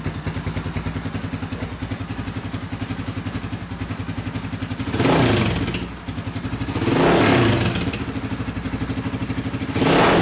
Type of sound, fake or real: real